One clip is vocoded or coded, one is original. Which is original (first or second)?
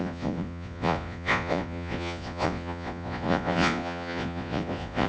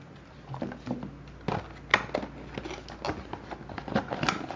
second